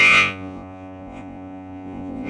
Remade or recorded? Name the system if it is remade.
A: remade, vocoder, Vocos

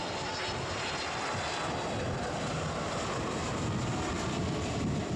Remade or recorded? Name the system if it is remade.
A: recorded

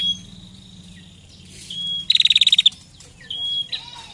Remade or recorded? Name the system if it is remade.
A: recorded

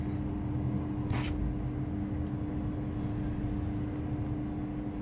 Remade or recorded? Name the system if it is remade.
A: recorded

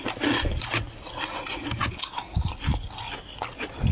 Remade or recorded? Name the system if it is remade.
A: recorded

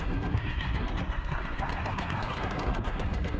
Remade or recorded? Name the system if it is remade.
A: remade, codec, SNAC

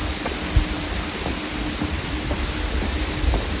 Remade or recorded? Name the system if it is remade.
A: recorded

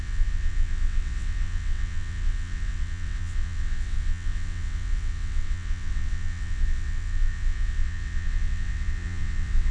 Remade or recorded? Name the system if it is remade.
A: remade, vocoder, WaveNeXt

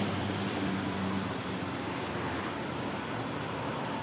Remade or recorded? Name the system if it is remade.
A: remade, vocoder, BigVGAN v2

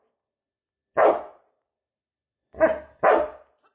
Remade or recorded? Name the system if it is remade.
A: recorded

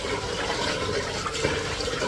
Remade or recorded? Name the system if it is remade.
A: remade, vocoder, BigVGAN v2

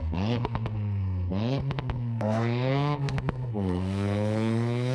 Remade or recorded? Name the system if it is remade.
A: remade, codec, SNAC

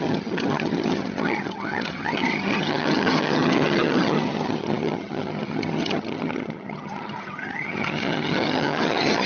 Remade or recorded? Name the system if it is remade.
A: remade, vocoder, HiFi-GAN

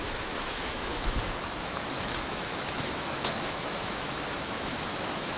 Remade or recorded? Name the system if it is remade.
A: remade, autoencoder, DAC-VAE